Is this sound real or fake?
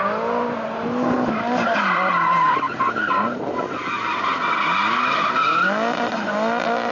real